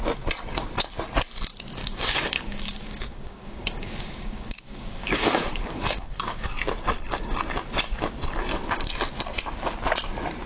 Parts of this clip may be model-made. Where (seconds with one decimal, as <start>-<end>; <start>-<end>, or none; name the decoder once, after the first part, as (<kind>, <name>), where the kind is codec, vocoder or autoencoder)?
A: 1.8-6.5 (codec, DAC)